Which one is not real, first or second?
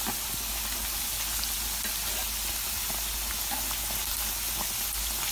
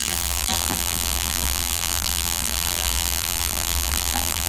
second